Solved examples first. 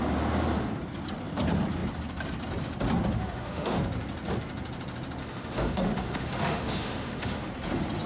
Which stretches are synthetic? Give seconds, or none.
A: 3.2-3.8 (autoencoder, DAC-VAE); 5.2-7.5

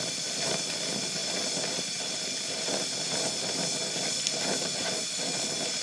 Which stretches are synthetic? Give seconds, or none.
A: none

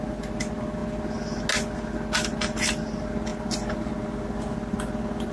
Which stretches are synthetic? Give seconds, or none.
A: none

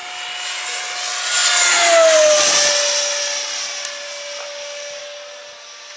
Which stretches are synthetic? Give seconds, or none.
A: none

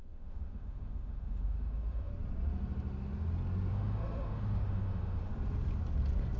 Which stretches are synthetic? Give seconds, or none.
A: 0.0-2.1 (autoencoder, DAC-VAE); 3.7-5.3